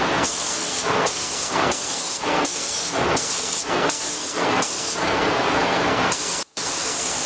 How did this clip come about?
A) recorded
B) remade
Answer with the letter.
B